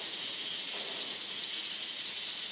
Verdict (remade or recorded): remade